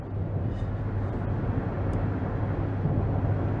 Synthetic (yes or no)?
no